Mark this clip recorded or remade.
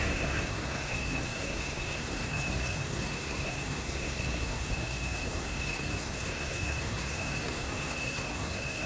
remade